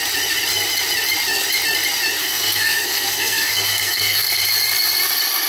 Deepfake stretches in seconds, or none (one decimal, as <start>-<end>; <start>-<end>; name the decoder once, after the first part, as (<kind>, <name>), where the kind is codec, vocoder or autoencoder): 2.2-4.4 (codec, SNAC)